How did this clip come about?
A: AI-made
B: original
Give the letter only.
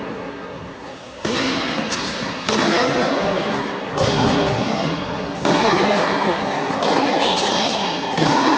A